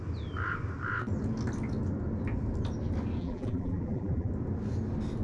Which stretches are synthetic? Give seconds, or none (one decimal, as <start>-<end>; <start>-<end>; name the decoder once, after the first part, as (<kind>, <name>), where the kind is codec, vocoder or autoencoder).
3.2-4.3 (vocoder, BigVGAN v2)